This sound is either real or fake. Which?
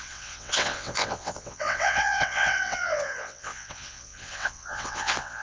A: fake